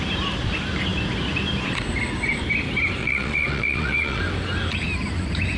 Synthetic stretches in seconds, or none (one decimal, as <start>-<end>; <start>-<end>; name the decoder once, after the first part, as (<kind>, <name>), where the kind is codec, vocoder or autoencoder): 3.0-4.2 (vocoder, Vocos)